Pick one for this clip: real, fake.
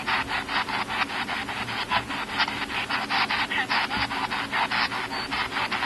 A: real